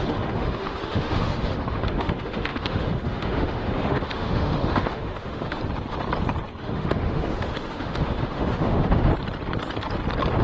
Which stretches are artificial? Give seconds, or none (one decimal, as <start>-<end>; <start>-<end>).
0.0-5.6; 6.6-9.1